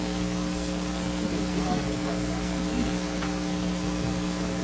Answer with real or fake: fake